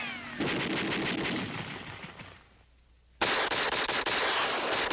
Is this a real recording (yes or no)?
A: yes